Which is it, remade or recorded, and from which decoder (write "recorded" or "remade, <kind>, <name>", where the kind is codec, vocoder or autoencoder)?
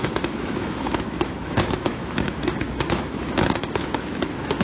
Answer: remade, autoencoder, DAC-VAE